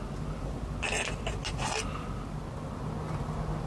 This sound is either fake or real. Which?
real